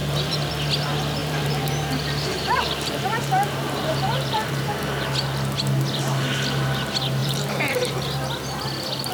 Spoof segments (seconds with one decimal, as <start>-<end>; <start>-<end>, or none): 0.0-0.5; 1.2-4.8; 7.2-7.7